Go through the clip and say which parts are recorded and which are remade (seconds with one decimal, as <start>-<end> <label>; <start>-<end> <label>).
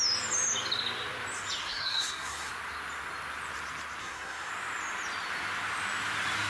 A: 0.0-1.6 recorded; 1.6-2.5 remade; 2.5-4.0 recorded; 4.0-4.5 remade; 4.5-6.5 recorded